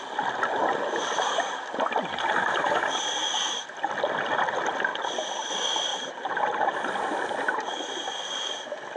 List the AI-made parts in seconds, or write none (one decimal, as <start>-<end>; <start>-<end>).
5.9-6.9